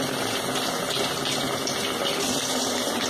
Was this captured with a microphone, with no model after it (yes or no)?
yes